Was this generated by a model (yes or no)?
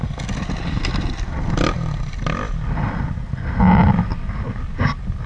no